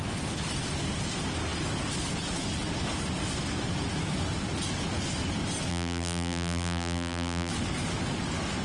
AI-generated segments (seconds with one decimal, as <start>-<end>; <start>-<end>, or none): 5.7-7.5